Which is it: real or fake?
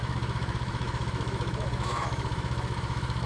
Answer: fake